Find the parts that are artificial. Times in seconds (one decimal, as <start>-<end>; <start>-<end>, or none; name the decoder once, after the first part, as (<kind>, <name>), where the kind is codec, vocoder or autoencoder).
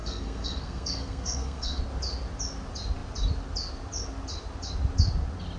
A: 0.0-1.8 (codec, SNAC)